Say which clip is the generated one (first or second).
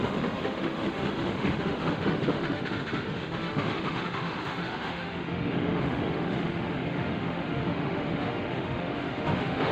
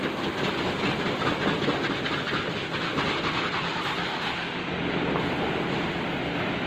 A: first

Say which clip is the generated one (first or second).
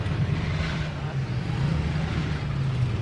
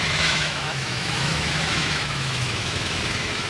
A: second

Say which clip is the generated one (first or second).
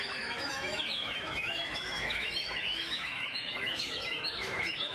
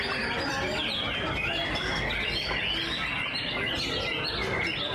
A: first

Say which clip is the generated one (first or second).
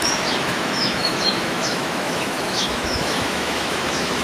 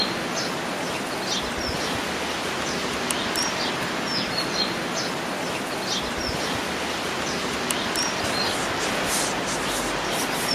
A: first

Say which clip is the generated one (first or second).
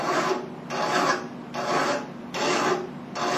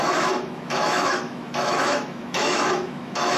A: second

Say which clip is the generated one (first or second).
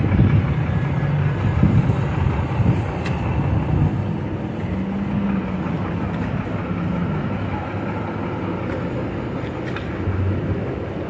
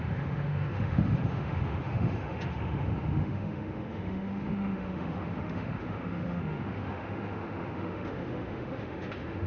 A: second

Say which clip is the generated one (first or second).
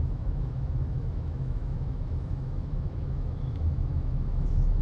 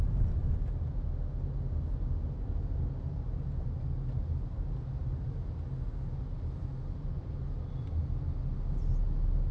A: first